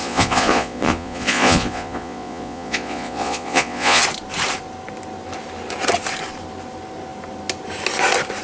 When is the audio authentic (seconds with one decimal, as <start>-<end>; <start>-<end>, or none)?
4.0-8.4